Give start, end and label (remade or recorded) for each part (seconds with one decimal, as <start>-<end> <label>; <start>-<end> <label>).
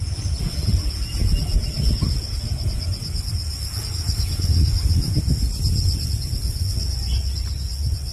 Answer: 0.0-8.1 recorded